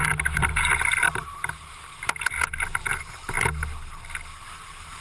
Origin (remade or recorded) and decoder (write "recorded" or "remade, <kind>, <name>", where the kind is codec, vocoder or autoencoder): recorded